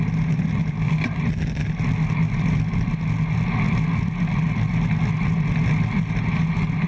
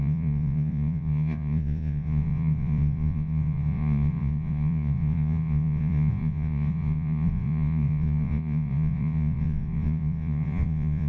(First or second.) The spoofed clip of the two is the second